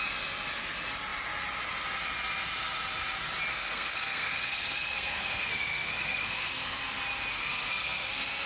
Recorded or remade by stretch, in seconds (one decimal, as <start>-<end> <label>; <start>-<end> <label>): 0.0-3.5 recorded; 3.5-6.8 remade; 6.8-7.3 recorded; 7.3-8.5 remade